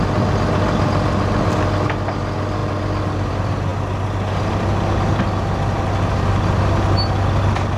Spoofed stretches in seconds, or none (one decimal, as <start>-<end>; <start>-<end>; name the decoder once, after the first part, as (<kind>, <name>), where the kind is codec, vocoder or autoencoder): none